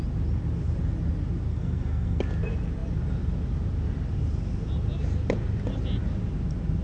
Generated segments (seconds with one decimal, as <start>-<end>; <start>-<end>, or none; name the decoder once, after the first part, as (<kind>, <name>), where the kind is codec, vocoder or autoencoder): 1.5-2.2 (codec, SNAC)